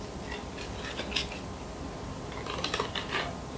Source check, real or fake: real